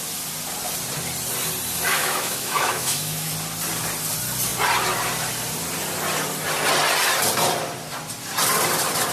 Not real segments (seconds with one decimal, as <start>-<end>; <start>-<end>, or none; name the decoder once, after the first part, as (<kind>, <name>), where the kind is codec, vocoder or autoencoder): 1.9-3.3 (autoencoder, DAC-VAE)